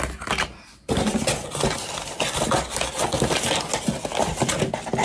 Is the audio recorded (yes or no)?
yes